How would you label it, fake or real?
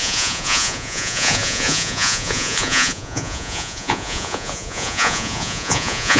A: fake